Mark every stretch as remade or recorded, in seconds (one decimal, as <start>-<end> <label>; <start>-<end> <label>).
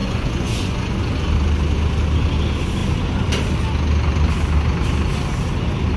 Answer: 0.0-1.0 remade; 1.0-6.0 recorded